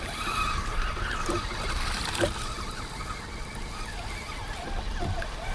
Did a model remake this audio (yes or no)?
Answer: no